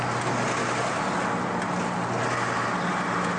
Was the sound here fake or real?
real